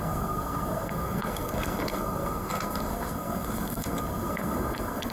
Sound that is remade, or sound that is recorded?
remade